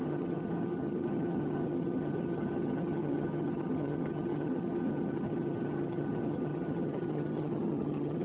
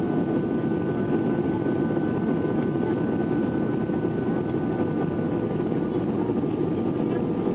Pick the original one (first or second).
second